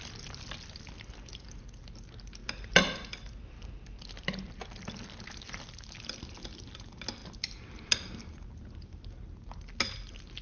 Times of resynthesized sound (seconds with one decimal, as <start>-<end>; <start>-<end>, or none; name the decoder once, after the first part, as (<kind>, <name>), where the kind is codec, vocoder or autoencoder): none